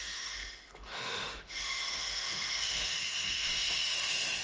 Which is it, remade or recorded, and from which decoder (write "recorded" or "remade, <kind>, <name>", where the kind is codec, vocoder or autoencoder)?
remade, autoencoder, DAC-VAE